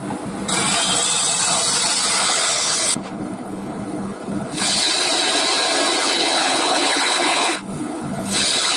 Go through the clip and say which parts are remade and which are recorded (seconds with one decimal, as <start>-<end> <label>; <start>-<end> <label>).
0.0-2.2 recorded; 2.2-4.9 remade; 4.9-6.0 recorded; 6.0-8.8 remade